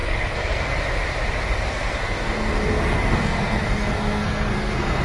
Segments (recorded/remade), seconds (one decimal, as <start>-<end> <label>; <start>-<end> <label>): 0.0-0.8 remade; 0.8-1.7 recorded; 1.7-5.0 remade